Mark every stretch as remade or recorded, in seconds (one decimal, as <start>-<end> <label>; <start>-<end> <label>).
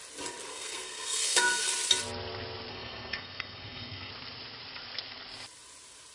0.0-0.5 recorded; 0.5-1.7 remade; 1.7-2.7 recorded; 2.7-4.1 remade; 4.1-6.1 recorded